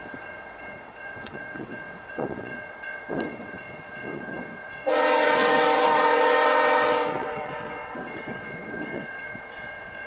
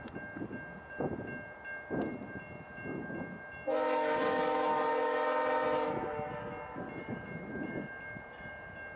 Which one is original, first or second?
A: second